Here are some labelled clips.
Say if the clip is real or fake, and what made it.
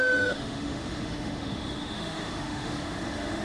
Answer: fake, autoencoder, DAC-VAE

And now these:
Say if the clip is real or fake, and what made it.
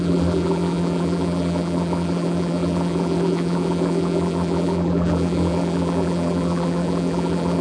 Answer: fake, vocoder, BigVGAN v2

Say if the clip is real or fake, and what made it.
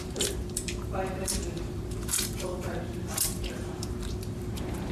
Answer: fake, vocoder, BigVGAN v2